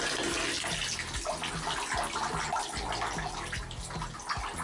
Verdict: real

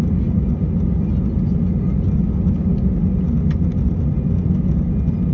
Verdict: real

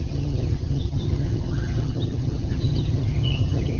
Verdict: fake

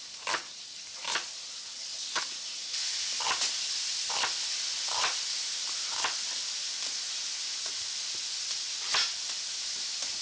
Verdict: real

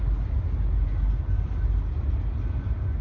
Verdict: real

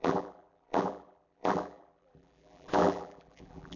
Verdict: fake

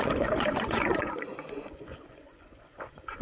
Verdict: fake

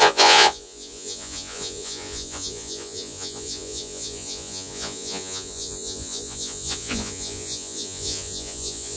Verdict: fake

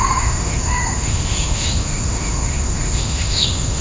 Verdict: fake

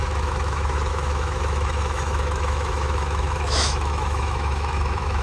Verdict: fake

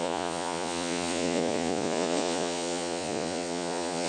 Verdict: fake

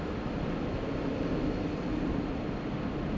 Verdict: real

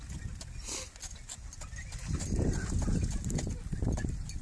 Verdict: real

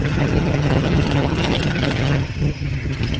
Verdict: fake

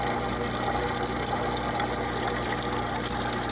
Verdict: real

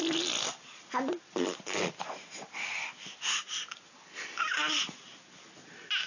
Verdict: real